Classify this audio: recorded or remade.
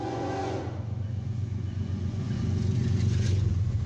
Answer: remade